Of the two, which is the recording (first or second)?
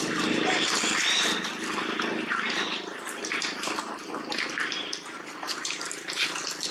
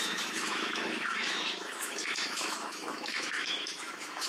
first